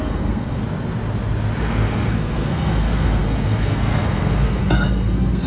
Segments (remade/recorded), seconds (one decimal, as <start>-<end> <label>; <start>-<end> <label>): 0.0-0.6 remade; 0.6-1.6 recorded; 1.6-5.5 remade